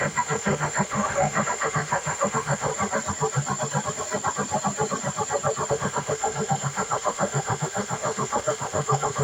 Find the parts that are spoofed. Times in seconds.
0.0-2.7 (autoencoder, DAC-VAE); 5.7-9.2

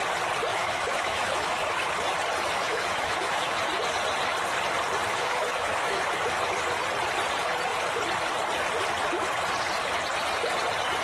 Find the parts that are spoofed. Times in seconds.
0.5-1.9 (autoencoder, DAC-VAE); 2.6-3.6; 5.1-6.0

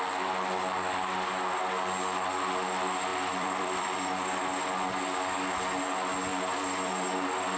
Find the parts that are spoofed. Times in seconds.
3.1-4.7 (vocoder, BigVGAN v2); 6.3-7.6

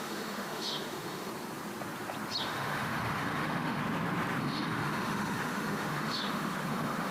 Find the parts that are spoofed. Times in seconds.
0.0-1.3 (autoencoder, DAC-VAE); 2.4-3.8; 4.4-7.1